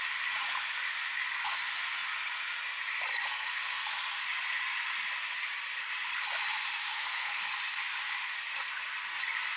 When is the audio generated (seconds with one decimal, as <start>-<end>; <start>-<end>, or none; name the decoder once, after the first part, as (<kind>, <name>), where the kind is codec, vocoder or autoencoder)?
3.3-3.9 (codec, SNAC); 6.9-7.5